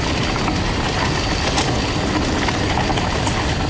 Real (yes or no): yes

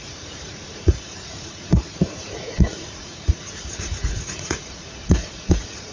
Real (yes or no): no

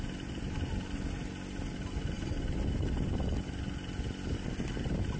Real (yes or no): yes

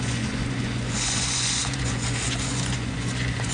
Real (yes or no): no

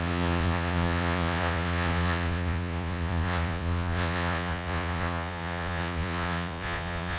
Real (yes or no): no